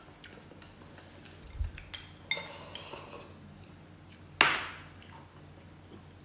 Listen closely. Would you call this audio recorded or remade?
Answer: recorded